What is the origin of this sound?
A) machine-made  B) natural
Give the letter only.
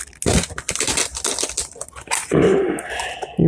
B